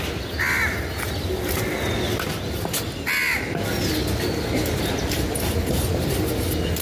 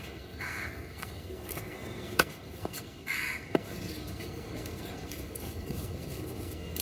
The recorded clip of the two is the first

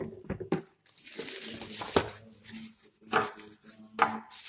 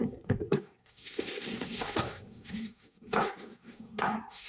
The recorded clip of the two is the first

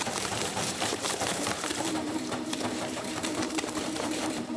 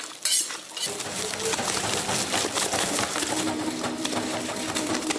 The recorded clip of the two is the second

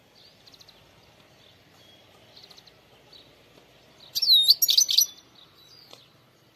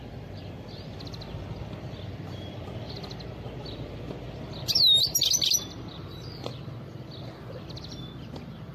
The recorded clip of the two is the first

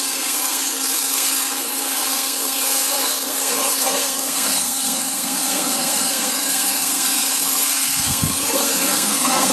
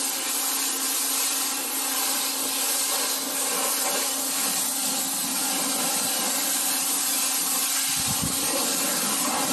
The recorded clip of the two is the second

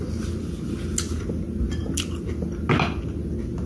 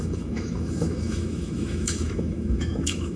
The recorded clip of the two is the first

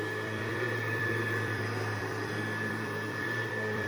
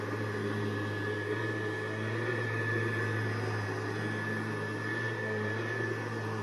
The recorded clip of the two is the second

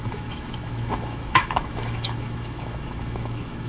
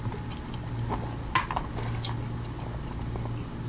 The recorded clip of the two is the second